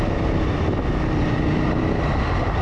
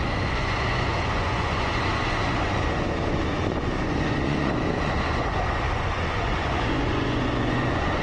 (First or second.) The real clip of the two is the first